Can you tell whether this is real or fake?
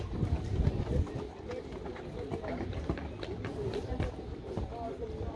real